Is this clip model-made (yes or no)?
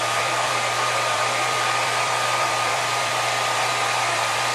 yes